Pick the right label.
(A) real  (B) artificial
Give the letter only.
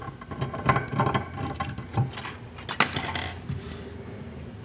A